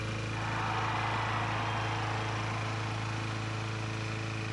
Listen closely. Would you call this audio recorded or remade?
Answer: recorded